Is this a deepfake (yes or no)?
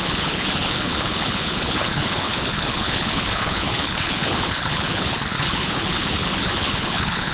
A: yes